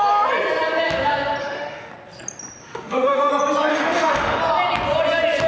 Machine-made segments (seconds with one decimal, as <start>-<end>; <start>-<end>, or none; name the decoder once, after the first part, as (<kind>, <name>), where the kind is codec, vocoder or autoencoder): 1.4-1.9 (autoencoder, DAC-VAE); 2.6-3.3; 3.7-4.4